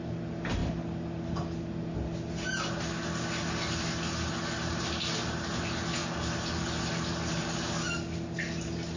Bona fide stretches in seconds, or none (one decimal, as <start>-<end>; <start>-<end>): 0.0-9.0